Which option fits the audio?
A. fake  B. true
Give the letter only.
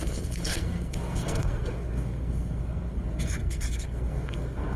A